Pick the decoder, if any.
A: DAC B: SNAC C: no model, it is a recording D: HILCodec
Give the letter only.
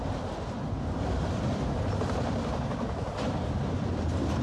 C